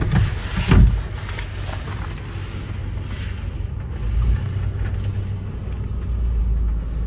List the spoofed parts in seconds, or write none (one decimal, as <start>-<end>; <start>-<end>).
none